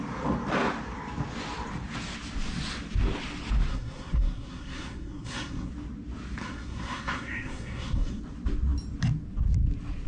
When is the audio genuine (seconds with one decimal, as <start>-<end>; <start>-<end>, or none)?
0.0-3.7; 5.7-6.4; 8.2-10.1